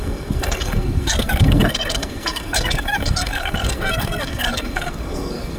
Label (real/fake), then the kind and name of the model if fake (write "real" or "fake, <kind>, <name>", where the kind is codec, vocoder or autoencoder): fake, codec, SNAC